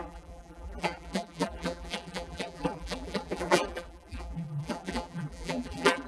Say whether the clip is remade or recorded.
remade